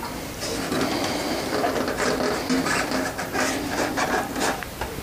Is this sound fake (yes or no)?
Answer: yes